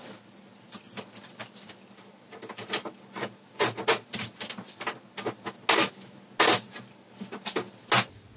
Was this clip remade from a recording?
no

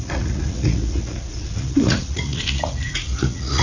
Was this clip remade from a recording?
yes